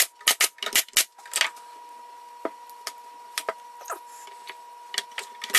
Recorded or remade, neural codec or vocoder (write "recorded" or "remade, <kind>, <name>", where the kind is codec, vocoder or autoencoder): recorded